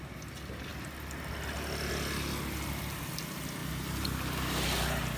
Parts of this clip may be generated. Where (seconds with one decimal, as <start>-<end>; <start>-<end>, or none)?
3.6-5.2